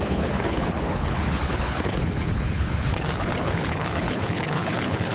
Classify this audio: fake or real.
fake